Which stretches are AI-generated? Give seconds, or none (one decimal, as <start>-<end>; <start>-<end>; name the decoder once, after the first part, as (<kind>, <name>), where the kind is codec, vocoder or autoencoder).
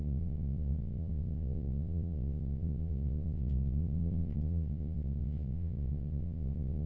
0.0-6.9 (vocoder, Vocos)